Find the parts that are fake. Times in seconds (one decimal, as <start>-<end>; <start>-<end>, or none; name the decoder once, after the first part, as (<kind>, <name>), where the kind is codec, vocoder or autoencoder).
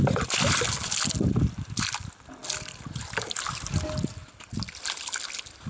2.4-4.1 (vocoder, BigVGAN v2)